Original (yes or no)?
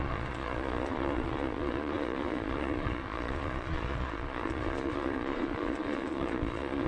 no